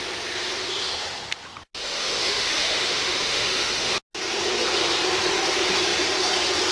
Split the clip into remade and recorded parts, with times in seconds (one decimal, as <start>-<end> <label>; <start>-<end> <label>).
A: 0.0-1.8 recorded; 1.8-3.9 remade; 3.9-6.7 recorded

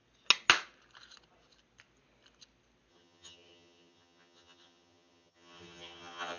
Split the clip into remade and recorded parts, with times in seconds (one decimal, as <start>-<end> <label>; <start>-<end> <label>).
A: 0.0-2.9 recorded; 2.9-6.4 remade

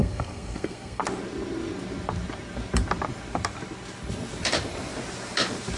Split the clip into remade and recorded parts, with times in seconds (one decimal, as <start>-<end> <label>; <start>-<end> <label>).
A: 0.0-1.0 remade; 1.0-5.8 recorded

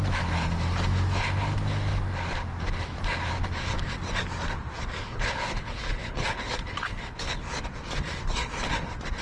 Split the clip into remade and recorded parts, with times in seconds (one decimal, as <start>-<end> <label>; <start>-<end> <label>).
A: 0.0-5.0 recorded; 5.0-7.5 remade; 7.5-9.2 recorded

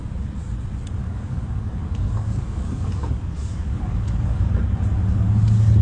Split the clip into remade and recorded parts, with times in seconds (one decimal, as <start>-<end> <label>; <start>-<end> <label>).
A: 0.0-1.0 recorded; 1.0-4.5 remade; 4.5-5.8 recorded

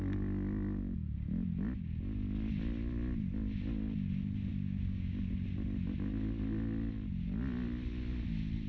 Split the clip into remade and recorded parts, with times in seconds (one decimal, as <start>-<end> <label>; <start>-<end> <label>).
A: 0.0-4.5 recorded; 4.5-5.3 remade; 5.3-8.7 recorded

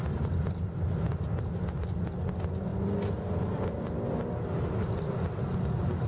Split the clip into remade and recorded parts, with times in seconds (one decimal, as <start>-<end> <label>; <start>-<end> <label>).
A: 0.0-6.1 recorded